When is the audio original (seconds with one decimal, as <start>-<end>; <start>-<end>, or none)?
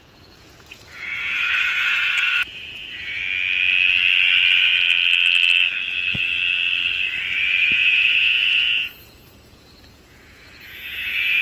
3.2-7.6